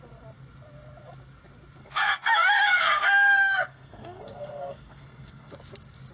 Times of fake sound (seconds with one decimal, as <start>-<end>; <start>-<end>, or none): 1.8-5.5